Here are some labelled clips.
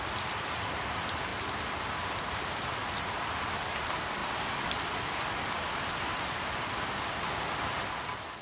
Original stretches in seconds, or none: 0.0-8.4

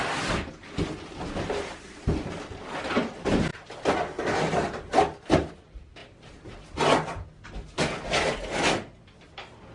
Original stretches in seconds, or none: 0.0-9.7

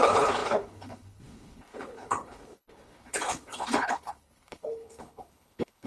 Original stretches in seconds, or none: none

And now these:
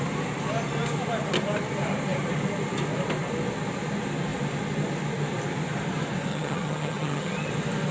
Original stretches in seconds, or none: 0.0-6.3; 7.5-7.9

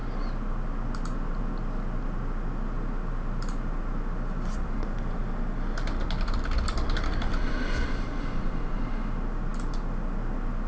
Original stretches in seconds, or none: 0.0-10.7

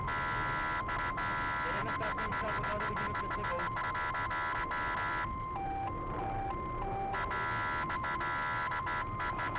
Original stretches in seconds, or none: 0.0-9.6